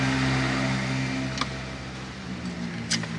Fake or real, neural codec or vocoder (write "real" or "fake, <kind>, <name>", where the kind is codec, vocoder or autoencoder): real